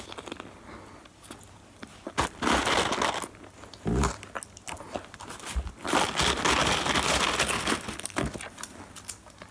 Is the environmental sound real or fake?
real